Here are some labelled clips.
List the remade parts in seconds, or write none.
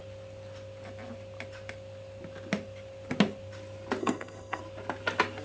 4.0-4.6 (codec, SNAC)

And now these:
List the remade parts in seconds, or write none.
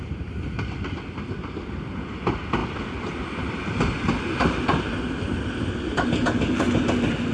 none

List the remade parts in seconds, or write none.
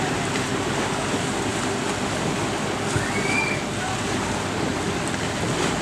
none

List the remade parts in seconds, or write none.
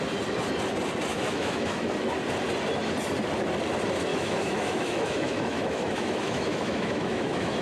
1.1-1.9 (autoencoder, DAC-VAE); 4.1-7.6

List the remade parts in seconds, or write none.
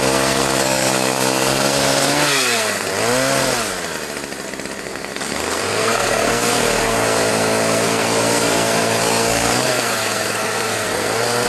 0.0-2.9 (codec, SNAC); 4.8-11.5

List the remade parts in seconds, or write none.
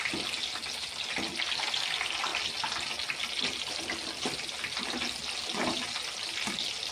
none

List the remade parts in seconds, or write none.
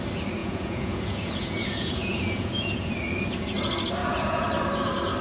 0.4-2.9 (vocoder, Vocos); 4.0-4.5